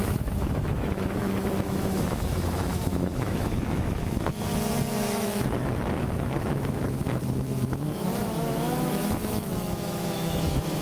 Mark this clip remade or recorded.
remade